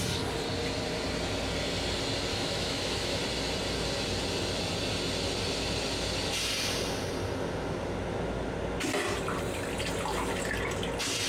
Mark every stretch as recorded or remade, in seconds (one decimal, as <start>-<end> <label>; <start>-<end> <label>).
0.0-2.3 recorded; 2.3-3.2 remade; 3.2-11.3 recorded